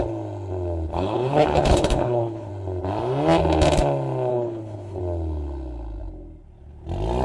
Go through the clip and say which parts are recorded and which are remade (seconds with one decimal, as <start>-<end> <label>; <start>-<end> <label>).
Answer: 0.0-0.9 recorded; 0.9-2.5 remade; 2.5-4.3 recorded; 4.3-5.0 remade; 5.0-7.2 recorded